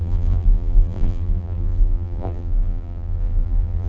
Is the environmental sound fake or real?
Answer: fake